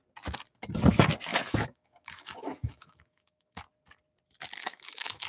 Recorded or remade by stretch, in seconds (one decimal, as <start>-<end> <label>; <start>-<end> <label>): 0.0-1.3 recorded; 1.3-3.6 remade; 3.6-4.6 recorded; 4.6-5.3 remade